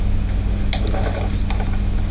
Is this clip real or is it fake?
real